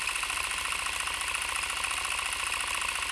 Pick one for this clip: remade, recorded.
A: recorded